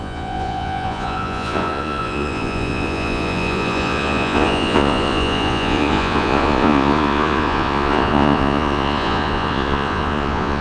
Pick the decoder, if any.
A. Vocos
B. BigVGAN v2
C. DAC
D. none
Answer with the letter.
A